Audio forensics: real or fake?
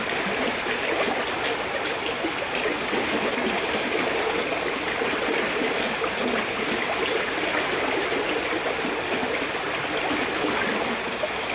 real